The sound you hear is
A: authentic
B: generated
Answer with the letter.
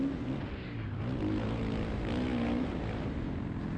A